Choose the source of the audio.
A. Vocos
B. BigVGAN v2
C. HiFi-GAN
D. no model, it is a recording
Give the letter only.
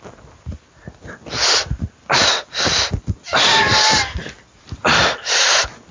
D